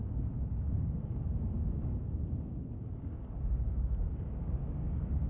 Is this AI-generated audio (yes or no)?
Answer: yes